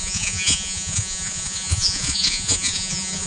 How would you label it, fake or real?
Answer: fake